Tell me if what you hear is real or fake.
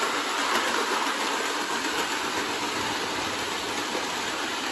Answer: real